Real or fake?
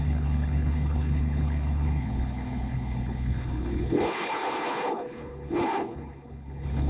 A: fake